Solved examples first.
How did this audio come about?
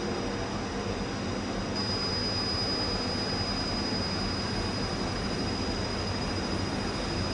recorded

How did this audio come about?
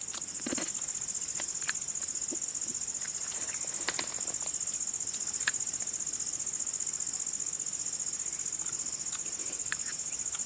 recorded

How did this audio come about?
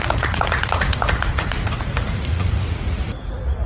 remade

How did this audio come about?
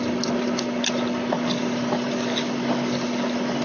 recorded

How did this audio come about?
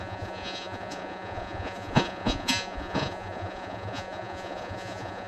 remade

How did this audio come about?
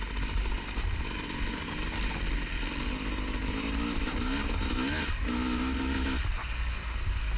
recorded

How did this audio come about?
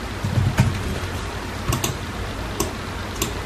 recorded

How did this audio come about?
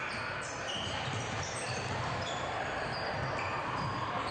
recorded